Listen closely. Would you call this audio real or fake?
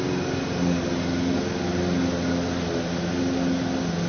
real